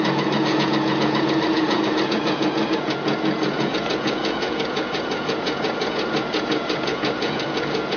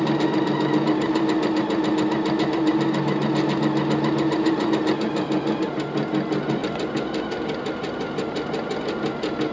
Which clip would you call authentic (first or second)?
second